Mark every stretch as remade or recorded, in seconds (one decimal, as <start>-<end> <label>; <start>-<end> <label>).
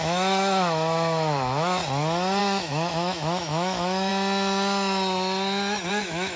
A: 0.0-1.8 remade; 1.8-2.4 recorded; 2.4-4.1 remade; 4.1-5.9 recorded; 5.9-6.4 remade